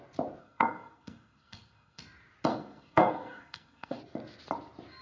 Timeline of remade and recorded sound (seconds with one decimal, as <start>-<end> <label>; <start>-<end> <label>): 0.0-0.4 recorded; 0.4-2.0 remade; 2.0-2.5 recorded; 2.5-4.0 remade; 4.0-5.0 recorded